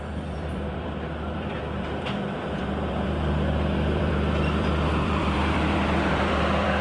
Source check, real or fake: fake